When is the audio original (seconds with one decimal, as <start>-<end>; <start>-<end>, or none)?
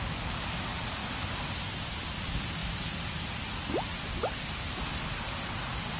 0.0-6.0